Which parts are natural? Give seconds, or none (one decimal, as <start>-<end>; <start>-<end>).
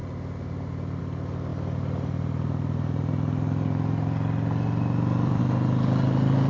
1.0-1.5; 5.4-6.5